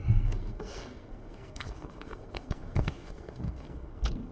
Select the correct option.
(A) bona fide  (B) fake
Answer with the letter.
B